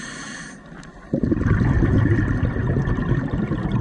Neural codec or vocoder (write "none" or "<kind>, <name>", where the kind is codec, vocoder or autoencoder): none